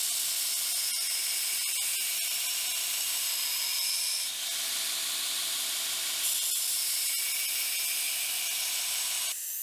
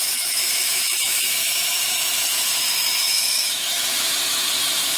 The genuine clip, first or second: first